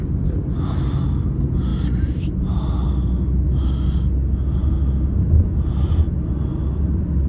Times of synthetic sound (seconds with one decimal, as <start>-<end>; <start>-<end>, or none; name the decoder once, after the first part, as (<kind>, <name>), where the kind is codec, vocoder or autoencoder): none